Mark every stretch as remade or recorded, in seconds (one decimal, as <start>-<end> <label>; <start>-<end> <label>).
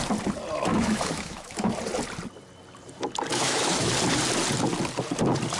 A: 0.0-0.7 recorded; 0.7-1.7 remade; 1.7-3.3 recorded; 3.3-3.9 remade; 3.9-5.6 recorded